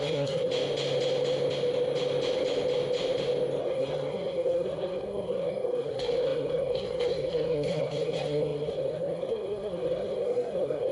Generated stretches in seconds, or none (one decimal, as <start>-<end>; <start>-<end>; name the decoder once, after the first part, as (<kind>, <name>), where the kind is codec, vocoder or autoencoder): 0.0-0.5 (codec, SNAC); 3.6-10.9